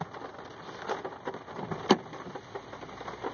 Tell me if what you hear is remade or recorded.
recorded